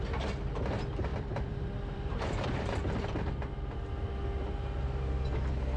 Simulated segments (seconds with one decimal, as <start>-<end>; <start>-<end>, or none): 1.1-2.7